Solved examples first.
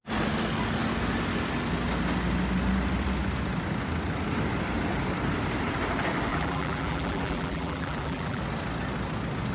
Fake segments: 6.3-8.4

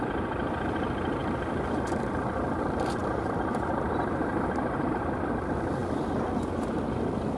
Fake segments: 3.0-5.1